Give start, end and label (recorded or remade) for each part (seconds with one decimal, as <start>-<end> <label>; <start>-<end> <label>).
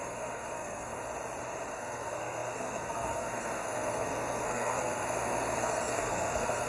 0.0-1.0 remade; 1.0-1.7 recorded; 1.7-6.7 remade